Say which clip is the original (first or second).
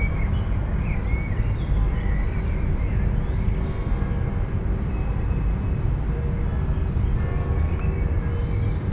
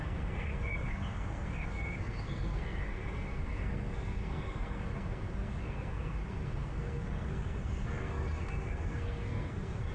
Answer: first